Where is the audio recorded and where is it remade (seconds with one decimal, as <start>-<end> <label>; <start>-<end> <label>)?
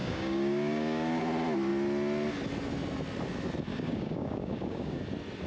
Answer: 0.0-1.2 remade; 1.2-3.7 recorded; 3.7-5.0 remade; 5.0-5.5 recorded